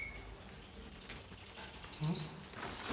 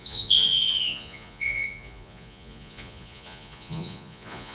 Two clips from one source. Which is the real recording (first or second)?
first